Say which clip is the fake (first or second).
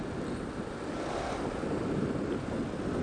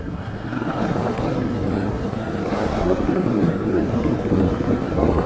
second